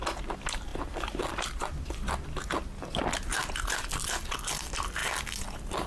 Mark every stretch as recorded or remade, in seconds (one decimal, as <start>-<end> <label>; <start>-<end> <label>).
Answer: 0.0-0.7 recorded; 0.7-1.8 remade; 1.8-5.9 recorded